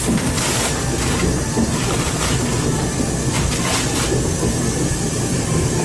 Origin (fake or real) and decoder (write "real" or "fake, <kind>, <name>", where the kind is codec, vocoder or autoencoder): real